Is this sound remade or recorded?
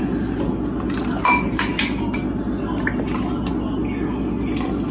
recorded